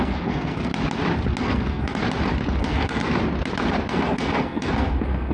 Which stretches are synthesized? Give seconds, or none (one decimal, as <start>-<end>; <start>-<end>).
0.0-0.7; 1.4-2.0; 2.6-3.0; 3.9-5.3